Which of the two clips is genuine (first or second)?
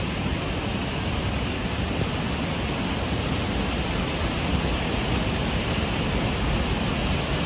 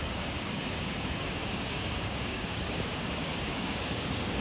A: first